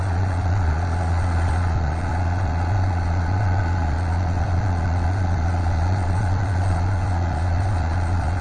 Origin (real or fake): fake